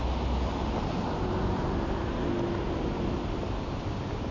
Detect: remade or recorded recorded